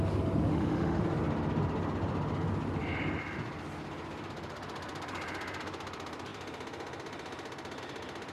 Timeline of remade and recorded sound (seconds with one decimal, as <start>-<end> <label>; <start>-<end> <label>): 0.0-0.5 recorded; 0.5-1.0 remade; 1.0-8.3 recorded